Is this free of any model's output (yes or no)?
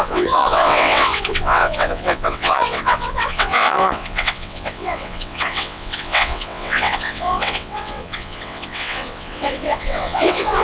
no